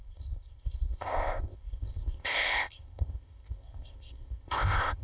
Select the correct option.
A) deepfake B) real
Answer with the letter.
A